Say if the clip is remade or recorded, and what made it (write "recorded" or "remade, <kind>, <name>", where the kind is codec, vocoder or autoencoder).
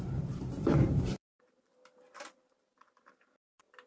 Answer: remade, vocoder, BigVGAN v2